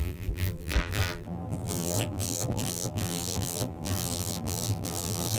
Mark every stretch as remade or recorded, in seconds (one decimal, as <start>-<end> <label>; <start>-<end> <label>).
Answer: 0.0-5.4 remade